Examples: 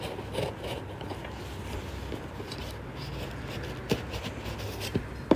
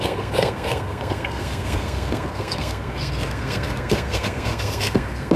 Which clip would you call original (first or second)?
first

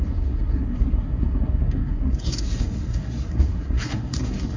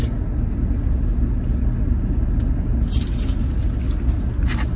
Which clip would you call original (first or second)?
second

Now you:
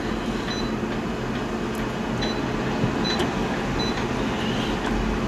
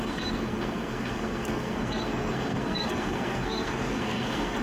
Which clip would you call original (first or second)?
first